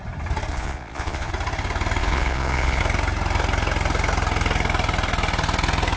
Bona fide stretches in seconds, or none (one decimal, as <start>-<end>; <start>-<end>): 0.0-0.5; 1.3-2.0; 2.8-6.0